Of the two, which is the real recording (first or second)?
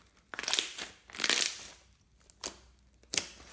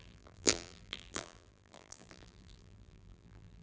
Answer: first